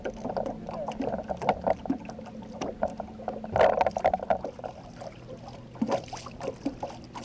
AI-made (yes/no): no